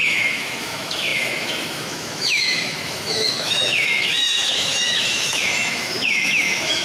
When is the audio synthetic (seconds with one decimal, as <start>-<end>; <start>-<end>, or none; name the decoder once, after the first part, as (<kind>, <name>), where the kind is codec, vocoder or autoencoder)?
0.0-6.8 (autoencoder, DAC-VAE)